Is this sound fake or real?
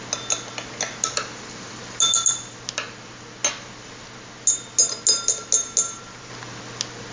real